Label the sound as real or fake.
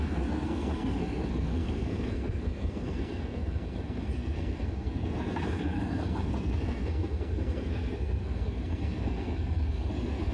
fake